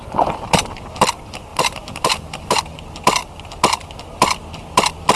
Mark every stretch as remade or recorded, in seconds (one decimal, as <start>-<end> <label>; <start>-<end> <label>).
0.0-1.5 recorded; 1.5-2.6 remade; 2.6-5.2 recorded